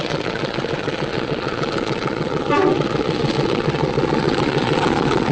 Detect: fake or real fake